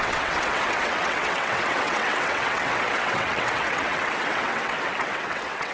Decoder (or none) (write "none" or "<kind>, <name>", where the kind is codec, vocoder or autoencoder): vocoder, WaveNeXt